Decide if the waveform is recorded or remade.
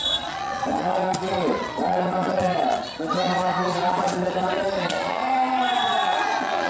remade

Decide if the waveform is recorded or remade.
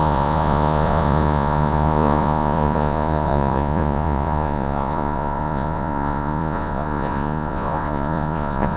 remade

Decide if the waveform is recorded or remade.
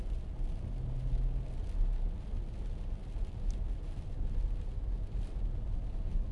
recorded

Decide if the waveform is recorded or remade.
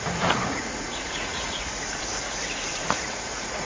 remade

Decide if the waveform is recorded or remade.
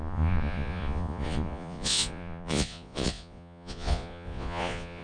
remade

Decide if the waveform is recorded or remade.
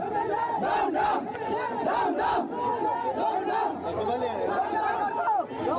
recorded